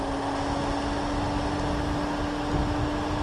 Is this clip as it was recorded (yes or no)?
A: yes